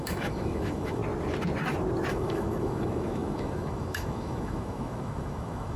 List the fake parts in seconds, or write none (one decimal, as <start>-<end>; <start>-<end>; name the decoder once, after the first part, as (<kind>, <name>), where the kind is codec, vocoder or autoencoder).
0.0-1.0 (autoencoder, DAC-VAE); 2.1-5.8